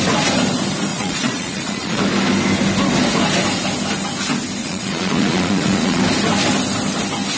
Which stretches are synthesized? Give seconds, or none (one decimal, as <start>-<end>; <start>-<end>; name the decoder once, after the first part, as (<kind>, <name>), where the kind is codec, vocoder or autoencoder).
0.9-2.0 (vocoder, Vocos); 4.6-6.0